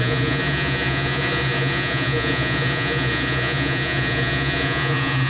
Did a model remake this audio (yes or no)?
yes